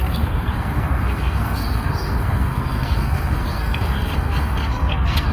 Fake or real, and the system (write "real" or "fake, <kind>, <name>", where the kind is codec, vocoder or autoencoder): fake, codec, SNAC